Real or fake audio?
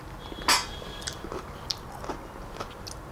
real